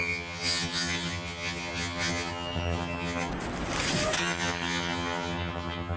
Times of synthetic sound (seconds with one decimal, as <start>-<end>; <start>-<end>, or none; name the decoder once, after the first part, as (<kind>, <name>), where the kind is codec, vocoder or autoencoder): 0.0-3.3 (vocoder, HiFi-GAN); 4.2-6.0